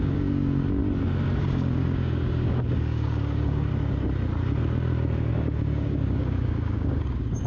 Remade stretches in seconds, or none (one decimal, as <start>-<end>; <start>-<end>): 0.0-0.8; 1.4-3.7; 5.3-7.5